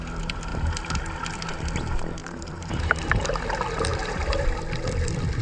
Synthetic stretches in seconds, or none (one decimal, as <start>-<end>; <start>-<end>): 2.2-3.3; 3.9-4.5